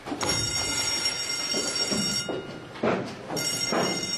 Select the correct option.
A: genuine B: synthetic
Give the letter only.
A